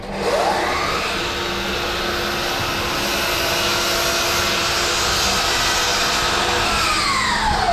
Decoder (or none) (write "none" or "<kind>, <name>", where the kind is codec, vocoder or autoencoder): none